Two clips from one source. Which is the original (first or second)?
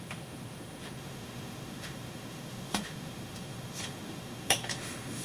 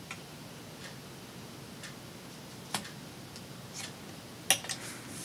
second